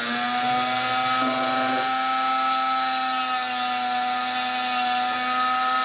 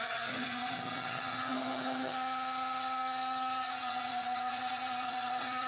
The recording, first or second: first